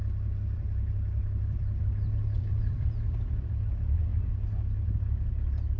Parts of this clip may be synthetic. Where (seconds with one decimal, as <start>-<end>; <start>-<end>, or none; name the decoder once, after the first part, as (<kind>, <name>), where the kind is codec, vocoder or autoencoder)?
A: 0.0-3.5 (vocoder, BigVGAN v2)